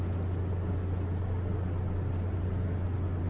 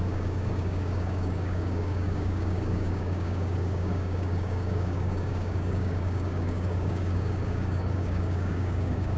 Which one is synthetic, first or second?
second